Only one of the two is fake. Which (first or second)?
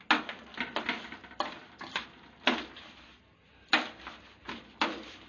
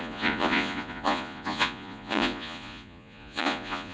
second